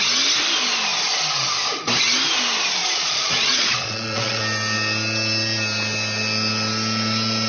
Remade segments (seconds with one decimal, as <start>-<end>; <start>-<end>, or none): 2.8-4.4

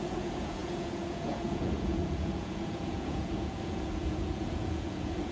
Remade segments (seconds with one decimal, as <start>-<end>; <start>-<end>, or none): 0.0-5.3

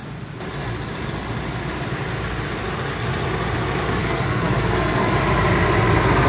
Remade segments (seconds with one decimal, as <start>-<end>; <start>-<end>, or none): 4.0-5.1

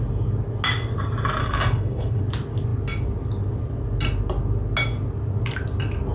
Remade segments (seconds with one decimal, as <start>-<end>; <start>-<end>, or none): 1.4-2.2

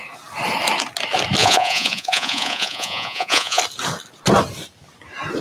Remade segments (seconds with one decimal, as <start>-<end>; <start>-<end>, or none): 1.4-3.6

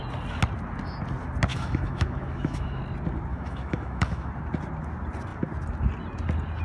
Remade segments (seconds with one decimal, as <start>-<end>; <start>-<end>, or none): 1.5-2.8; 3.3-4.3

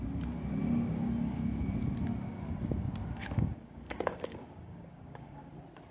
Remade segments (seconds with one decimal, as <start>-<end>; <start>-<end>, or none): 3.1-5.5